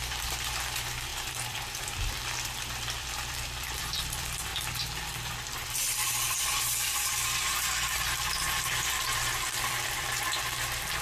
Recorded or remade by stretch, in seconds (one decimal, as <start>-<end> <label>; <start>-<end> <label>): 0.0-4.5 remade; 4.5-5.1 recorded; 5.1-11.0 remade